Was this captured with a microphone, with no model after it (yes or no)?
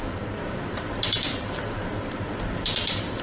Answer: no